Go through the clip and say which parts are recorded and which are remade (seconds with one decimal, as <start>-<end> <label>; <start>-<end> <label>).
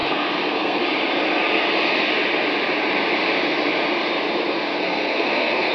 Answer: 0.0-0.8 remade; 0.8-4.7 recorded; 4.7-5.7 remade